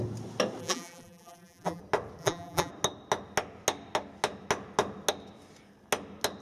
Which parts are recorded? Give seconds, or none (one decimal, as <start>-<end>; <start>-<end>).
0.0-0.6; 1.8-2.2; 2.7-6.4